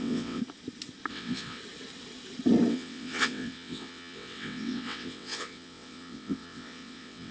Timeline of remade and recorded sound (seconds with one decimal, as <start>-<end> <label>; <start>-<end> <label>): 0.0-0.4 remade; 0.4-1.1 recorded; 1.1-1.6 remade; 1.6-2.7 recorded; 2.7-7.3 remade

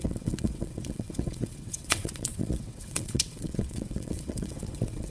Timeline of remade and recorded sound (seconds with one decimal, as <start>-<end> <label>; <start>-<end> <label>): 0.0-5.1 remade